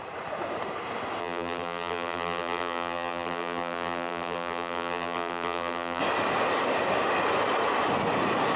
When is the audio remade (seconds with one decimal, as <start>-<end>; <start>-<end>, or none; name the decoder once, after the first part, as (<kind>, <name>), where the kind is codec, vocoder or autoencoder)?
1.2-6.0 (vocoder, BigVGAN v2)